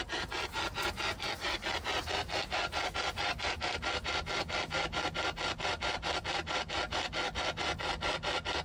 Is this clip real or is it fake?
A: real